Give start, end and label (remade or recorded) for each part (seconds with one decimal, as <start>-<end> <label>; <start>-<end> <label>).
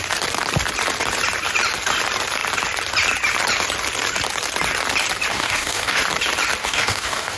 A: 0.0-5.3 recorded; 5.3-6.0 remade; 6.0-6.6 recorded; 6.6-7.4 remade